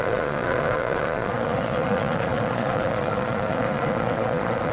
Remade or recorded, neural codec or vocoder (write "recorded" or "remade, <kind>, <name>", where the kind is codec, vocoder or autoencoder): remade, vocoder, Vocos